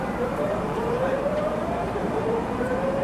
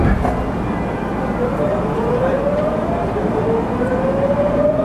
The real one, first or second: second